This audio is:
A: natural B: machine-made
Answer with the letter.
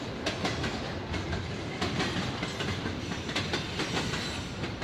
A